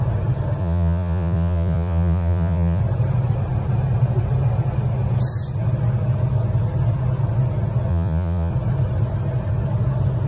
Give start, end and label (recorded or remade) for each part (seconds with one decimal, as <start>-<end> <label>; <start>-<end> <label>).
0.0-0.6 recorded; 0.6-2.8 remade; 2.8-7.9 recorded; 7.9-8.5 remade; 8.5-10.3 recorded